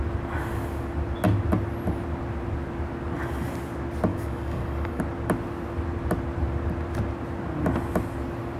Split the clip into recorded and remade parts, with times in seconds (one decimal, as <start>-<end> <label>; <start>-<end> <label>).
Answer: 0.0-4.1 recorded; 4.1-5.0 remade; 5.0-8.6 recorded